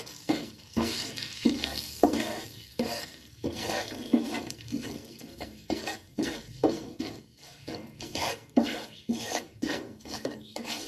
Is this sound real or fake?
fake